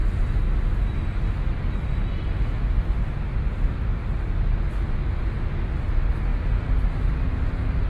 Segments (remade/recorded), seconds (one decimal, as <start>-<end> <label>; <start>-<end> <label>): 0.0-7.9 recorded